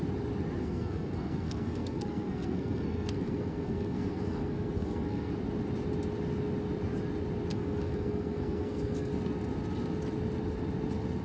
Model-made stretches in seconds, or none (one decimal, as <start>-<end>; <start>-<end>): 0.6-5.3; 7.5-9.1

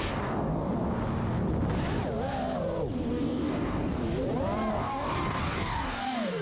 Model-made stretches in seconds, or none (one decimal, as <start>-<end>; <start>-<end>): 0.0-0.7; 3.1-3.9; 4.7-6.4

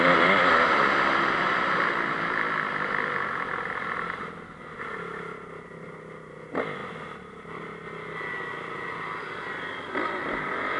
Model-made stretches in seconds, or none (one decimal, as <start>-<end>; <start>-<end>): none

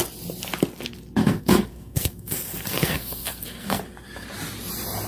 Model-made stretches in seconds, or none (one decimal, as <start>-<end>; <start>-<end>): 1.2-3.8

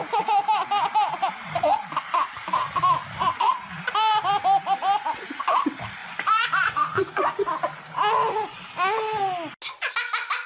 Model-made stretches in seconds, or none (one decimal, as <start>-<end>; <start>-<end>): 6.0-7.5

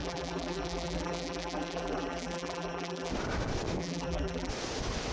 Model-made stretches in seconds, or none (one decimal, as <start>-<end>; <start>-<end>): 0.0-3.1; 3.8-4.5

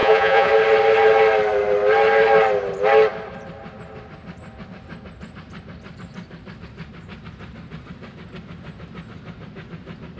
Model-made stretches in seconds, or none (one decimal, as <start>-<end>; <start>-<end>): 0.0-0.5